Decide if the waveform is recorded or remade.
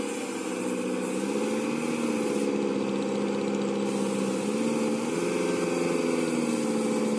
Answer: recorded